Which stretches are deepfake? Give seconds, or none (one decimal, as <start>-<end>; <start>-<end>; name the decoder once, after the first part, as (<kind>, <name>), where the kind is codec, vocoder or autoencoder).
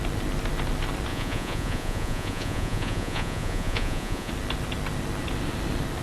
1.1-4.3 (vocoder, Vocos)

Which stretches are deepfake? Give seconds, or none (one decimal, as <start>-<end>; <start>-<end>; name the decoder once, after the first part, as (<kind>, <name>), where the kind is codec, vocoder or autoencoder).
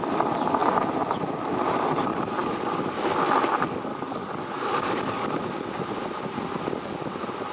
3.9-5.4 (codec, DAC)